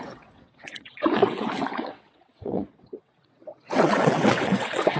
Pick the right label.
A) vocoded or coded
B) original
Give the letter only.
A